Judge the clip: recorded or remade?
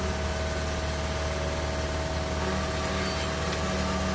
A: recorded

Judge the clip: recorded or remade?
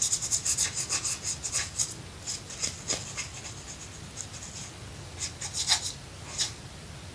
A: recorded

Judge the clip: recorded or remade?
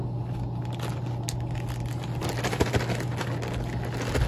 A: recorded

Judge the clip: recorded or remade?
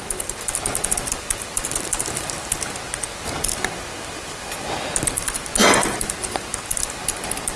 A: recorded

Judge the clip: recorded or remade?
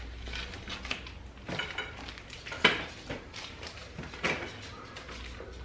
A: recorded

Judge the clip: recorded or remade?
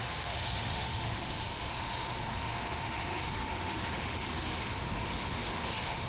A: remade